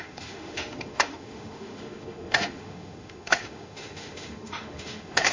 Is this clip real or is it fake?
fake